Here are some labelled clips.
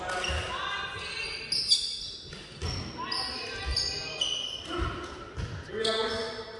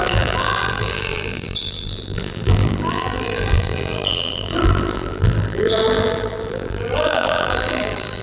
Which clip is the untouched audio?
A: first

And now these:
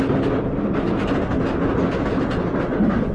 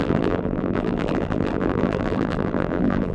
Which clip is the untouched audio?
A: first